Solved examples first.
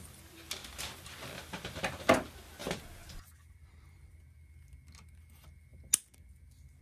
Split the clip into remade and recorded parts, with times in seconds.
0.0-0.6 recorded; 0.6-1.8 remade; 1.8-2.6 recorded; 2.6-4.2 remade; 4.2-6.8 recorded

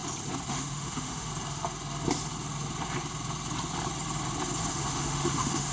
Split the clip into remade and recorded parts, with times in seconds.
0.0-0.5 recorded; 0.5-1.3 remade; 1.3-4.7 recorded; 4.7-5.7 remade

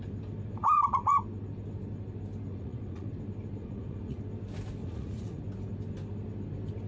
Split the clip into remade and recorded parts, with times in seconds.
0.0-0.6 recorded; 0.6-1.2 remade; 1.2-2.5 recorded; 2.5-3.1 remade; 3.1-3.6 recorded; 3.6-4.2 remade; 4.2-4.8 recorded; 4.8-5.4 remade; 5.4-6.9 recorded

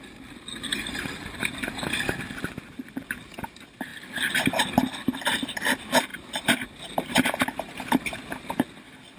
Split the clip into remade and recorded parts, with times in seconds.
0.0-0.7 recorded; 0.7-1.4 remade; 1.4-6.1 recorded; 6.1-7.9 remade; 7.9-9.2 recorded

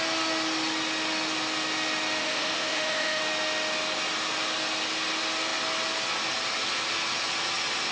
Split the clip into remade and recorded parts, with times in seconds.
0.0-2.2 recorded; 2.2-3.2 remade; 3.2-7.9 recorded

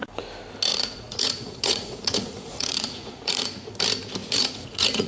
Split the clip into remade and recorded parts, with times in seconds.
0.0-0.7 recorded; 0.7-3.7 remade; 3.7-4.2 recorded; 4.2-5.1 remade

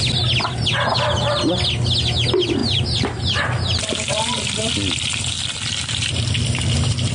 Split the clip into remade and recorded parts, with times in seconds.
0.0-2.6 recorded; 2.6-3.2 remade; 3.2-7.1 recorded

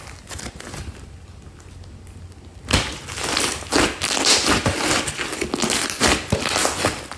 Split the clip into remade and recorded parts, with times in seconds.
0.0-7.2 recorded